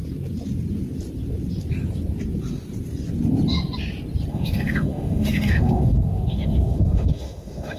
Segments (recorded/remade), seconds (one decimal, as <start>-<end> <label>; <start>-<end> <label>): 0.0-4.3 recorded; 4.3-7.8 remade